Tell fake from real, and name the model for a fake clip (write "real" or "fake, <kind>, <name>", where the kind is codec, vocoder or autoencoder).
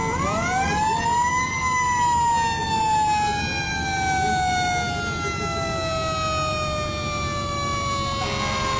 real